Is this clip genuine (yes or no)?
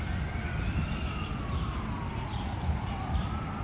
yes